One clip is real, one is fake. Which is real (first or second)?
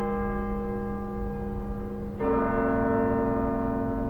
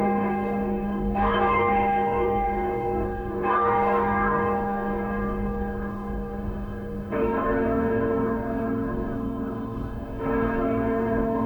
first